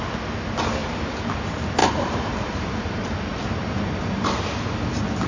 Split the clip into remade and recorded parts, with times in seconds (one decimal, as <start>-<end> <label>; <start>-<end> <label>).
0.0-0.8 recorded; 0.8-1.3 remade; 1.3-1.8 recorded; 1.8-4.3 remade; 4.3-5.3 recorded